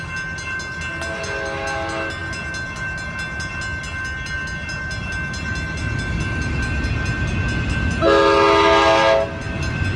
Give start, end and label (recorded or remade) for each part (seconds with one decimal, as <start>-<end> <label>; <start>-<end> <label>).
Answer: 0.0-10.0 recorded

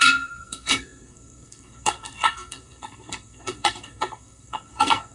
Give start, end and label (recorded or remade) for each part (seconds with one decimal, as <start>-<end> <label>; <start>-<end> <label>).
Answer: 0.0-5.1 remade

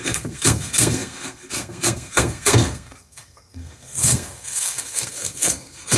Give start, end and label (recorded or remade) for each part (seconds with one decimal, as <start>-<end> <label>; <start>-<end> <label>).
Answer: 0.0-6.0 remade

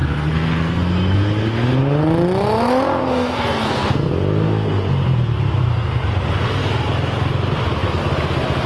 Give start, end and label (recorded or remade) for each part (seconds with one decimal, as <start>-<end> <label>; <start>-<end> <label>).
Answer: 0.0-0.8 remade; 0.8-3.0 recorded; 3.0-4.1 remade; 4.1-8.7 recorded

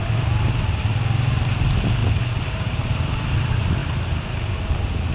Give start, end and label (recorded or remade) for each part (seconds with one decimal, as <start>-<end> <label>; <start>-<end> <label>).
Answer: 0.0-5.1 recorded

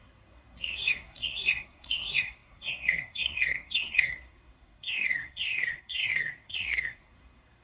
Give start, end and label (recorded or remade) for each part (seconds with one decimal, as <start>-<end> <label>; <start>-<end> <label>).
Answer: 0.0-7.6 remade